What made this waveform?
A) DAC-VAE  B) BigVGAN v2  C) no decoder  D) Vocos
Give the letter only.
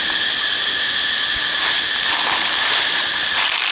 C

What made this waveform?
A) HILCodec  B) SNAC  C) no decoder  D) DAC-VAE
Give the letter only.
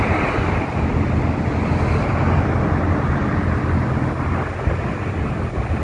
C